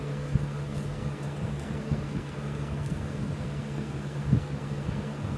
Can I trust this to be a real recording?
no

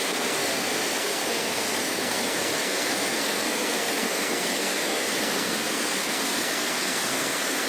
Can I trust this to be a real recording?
no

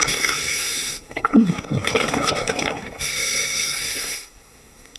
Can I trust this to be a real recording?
no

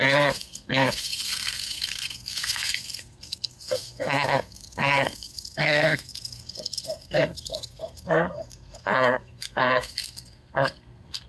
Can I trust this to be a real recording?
no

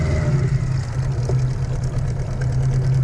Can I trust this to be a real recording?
yes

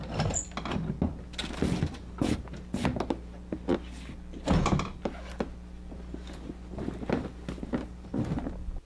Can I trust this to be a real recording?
yes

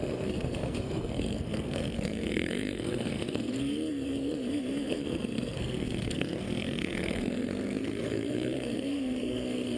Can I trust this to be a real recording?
no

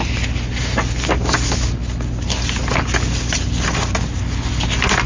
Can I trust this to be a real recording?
yes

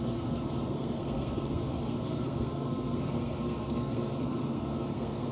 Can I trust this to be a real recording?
no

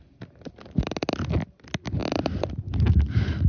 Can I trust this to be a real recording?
yes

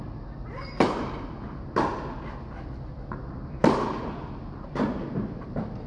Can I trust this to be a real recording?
yes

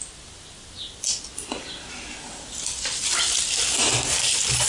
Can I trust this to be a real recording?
yes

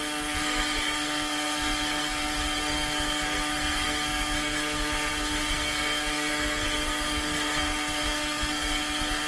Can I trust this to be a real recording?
no